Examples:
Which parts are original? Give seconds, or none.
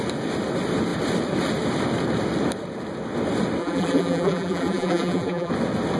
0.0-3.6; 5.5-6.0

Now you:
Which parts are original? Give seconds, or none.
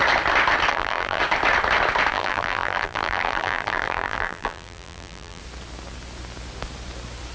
0.0-0.7; 1.2-2.1; 5.4-7.3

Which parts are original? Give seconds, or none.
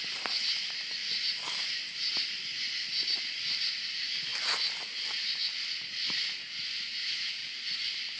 0.0-7.4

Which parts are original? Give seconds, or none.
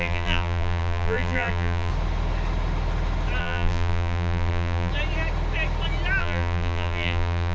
1.9-3.4; 4.9-6.2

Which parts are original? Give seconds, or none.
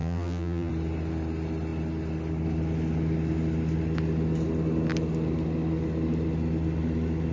0.7-7.3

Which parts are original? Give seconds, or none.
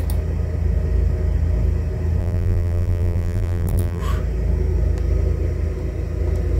0.0-2.2; 4.0-6.6